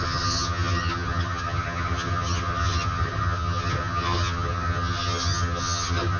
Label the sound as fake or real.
fake